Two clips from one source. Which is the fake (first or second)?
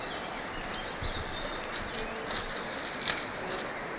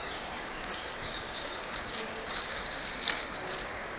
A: second